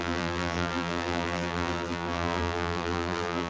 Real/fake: fake